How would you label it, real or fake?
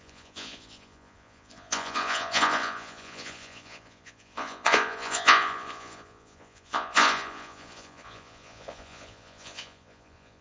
fake